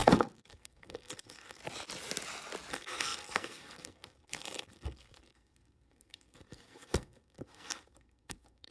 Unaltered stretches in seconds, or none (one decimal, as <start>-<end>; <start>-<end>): 1.6-2.7